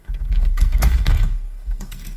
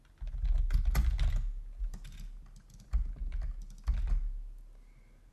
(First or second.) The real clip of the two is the second